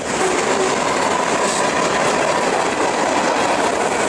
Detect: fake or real real